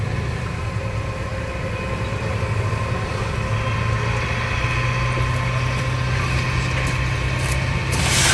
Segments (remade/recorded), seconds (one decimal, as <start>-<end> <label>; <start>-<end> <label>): 0.0-8.3 remade